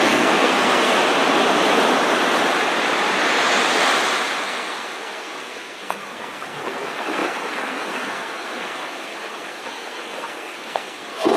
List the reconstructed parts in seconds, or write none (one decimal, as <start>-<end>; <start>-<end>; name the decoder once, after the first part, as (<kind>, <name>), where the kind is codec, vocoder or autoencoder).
0.0-1.0 (codec, SNAC); 4.4-11.4